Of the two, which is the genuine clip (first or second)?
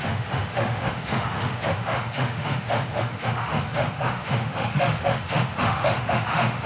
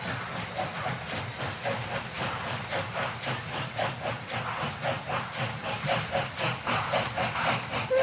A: second